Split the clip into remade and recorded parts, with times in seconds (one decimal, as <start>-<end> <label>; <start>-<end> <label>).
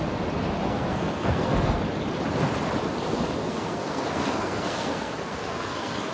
0.0-0.6 recorded; 0.6-1.8 remade; 1.8-3.4 recorded; 3.4-6.1 remade